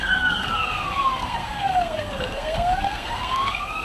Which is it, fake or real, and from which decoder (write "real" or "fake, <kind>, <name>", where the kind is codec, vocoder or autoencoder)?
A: fake, codec, SNAC